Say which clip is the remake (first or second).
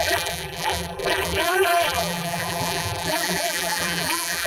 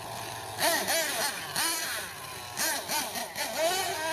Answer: first